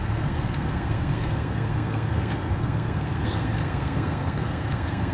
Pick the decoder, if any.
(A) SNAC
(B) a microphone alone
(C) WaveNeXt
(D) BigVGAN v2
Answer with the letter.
A